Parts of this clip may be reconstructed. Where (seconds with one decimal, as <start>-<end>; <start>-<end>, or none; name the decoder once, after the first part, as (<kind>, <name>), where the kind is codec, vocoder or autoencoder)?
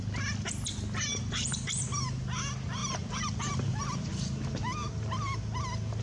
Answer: 1.1-1.8 (vocoder, BigVGAN v2); 2.8-3.8